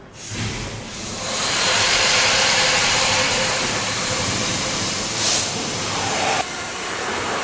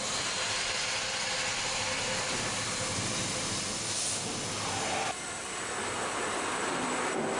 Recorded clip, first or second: second